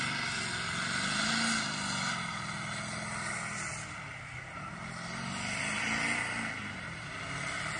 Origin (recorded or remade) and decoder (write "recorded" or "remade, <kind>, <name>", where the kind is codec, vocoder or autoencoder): recorded